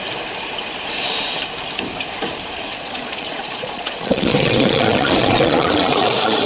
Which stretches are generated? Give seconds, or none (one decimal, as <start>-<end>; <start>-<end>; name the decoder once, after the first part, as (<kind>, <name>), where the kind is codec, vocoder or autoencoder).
2.7-6.5 (vocoder, Vocos)

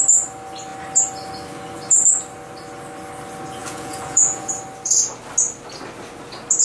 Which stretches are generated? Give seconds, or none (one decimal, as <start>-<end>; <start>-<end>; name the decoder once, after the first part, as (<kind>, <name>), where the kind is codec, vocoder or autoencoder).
3.6-4.6 (vocoder, Vocos)

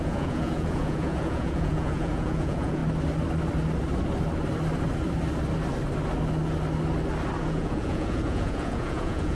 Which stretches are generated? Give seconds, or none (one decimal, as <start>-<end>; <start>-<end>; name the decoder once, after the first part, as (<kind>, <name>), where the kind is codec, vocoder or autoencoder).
0.0-2.8 (vocoder, Vocos); 7.4-9.3

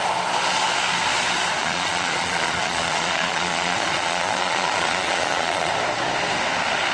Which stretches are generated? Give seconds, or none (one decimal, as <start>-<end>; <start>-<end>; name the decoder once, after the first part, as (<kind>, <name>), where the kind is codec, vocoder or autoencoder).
1.6-5.7 (vocoder, Vocos)

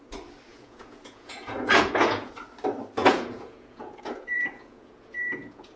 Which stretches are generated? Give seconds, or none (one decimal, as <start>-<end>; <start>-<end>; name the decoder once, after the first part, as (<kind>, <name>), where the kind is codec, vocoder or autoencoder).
0.5-2.3 (vocoder, Vocos); 3.0-5.8

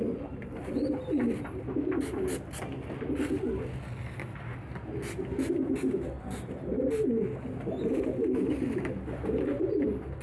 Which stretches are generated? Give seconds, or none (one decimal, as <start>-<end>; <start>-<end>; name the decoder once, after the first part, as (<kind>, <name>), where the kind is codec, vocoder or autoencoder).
none